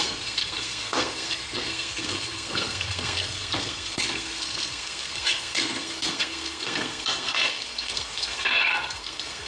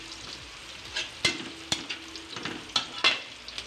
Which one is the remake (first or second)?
first